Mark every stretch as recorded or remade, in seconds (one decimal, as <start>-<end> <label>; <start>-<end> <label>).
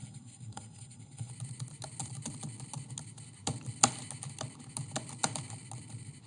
0.0-1.3 remade; 1.3-6.3 recorded